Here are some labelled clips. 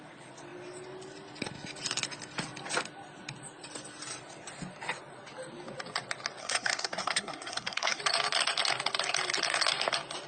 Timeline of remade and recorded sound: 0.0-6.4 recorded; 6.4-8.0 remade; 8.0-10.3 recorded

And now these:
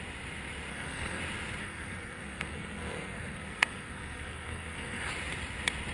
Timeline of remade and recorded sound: 0.0-0.7 recorded; 0.7-1.2 remade; 1.2-1.6 recorded; 1.6-5.1 remade; 5.1-5.9 recorded

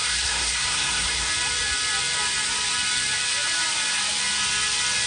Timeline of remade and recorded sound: 0.0-1.3 remade; 1.3-5.1 recorded

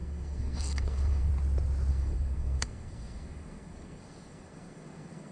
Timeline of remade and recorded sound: 0.0-1.3 remade; 1.3-1.9 recorded; 1.9-5.3 remade